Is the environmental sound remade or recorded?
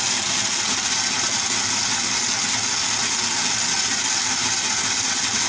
recorded